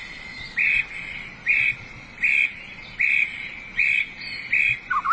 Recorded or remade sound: recorded